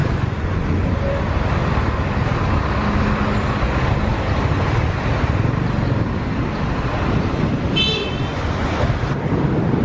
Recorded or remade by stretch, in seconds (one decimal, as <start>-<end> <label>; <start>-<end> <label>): 0.0-0.9 remade; 0.9-8.0 recorded; 8.0-8.8 remade; 8.8-9.8 recorded